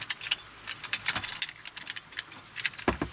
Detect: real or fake real